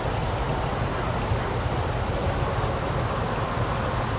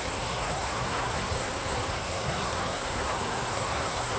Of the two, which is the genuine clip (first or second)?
first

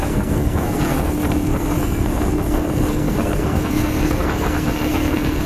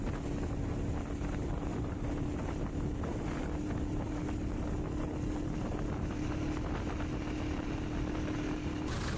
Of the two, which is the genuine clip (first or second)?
second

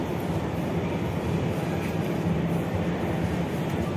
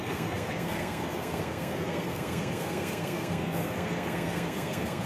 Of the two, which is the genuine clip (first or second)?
first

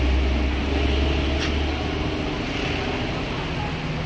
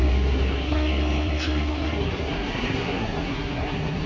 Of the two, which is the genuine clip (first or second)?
first